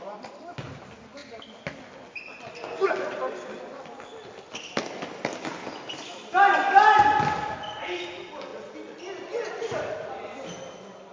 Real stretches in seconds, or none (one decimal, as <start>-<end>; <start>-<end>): 0.0-11.1